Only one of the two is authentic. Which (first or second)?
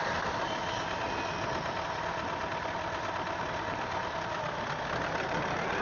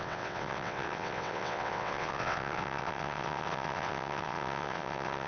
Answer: first